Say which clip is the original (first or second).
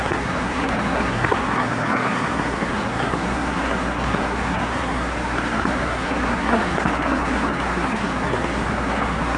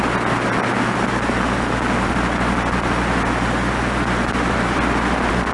second